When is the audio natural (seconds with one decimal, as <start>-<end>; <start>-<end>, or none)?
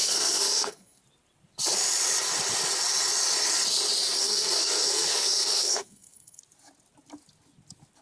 1.0-4.2; 6.4-8.0